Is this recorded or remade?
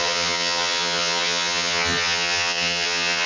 remade